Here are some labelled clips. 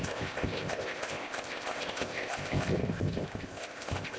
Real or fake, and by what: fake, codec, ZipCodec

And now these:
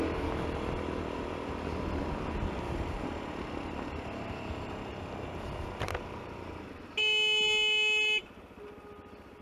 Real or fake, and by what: real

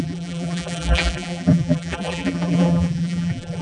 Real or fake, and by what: fake, vocoder, BigVGAN v2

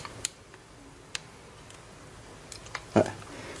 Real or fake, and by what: real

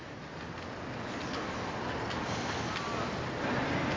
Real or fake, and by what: real